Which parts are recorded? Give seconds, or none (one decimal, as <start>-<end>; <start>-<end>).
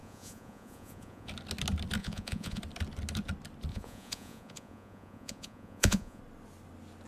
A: 1.3-2.0; 2.6-3.7; 6.2-7.1